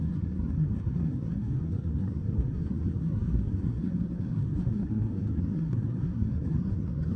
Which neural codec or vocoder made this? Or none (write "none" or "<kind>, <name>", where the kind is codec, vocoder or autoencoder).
codec, SNAC